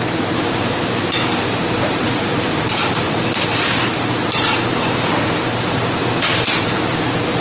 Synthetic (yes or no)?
yes